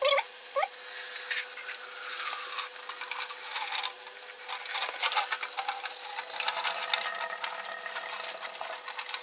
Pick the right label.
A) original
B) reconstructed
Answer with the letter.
A